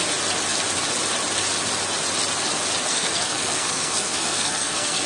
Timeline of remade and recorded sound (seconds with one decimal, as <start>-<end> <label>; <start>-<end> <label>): 0.0-2.9 recorded; 2.9-5.1 remade